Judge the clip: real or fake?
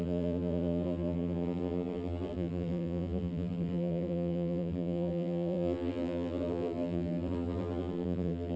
fake